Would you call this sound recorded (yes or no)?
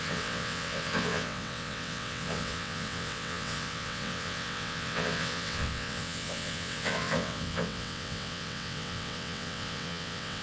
no